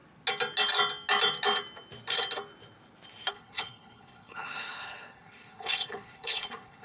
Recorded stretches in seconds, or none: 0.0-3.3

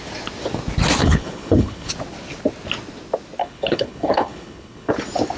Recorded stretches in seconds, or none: 0.0-1.0; 1.9-3.4; 4.9-5.4